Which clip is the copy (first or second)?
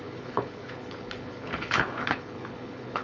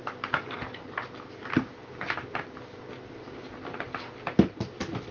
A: first